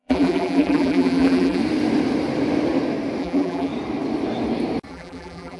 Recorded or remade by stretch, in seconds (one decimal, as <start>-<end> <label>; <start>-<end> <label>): 0.0-1.6 remade; 1.6-3.2 recorded; 3.2-3.7 remade; 3.7-4.9 recorded; 4.9-5.6 remade